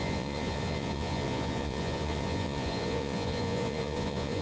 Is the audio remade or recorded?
remade